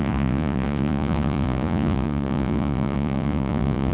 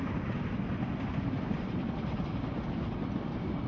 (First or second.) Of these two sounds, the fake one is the first